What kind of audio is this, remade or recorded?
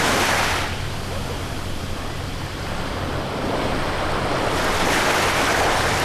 recorded